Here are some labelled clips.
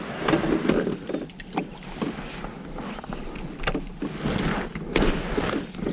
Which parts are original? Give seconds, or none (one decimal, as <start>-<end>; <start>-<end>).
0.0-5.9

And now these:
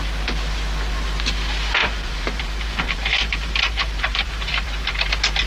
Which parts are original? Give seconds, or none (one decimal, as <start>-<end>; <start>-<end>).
0.0-1.8; 5.1-5.5

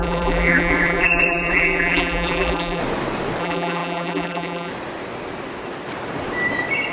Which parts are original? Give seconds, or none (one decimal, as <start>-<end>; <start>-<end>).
2.8-3.4; 4.7-6.9

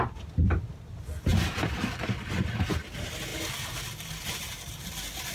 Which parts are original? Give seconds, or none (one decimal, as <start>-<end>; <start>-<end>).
0.0-1.3; 2.3-3.3; 4.1-5.3

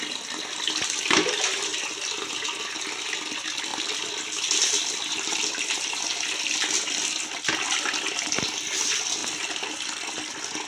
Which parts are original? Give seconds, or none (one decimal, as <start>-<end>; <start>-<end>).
0.0-3.7; 6.4-10.7

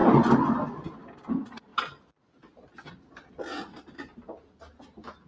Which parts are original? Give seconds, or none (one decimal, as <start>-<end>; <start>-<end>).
0.0-5.3